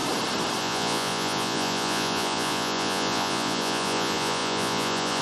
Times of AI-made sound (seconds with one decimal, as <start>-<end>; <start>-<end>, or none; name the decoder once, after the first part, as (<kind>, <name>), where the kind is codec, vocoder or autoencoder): 0.6-5.2 (vocoder, Vocos)